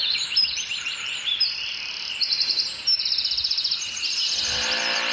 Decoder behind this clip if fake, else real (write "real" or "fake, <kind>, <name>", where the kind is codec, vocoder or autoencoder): real